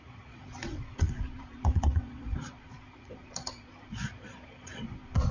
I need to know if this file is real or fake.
fake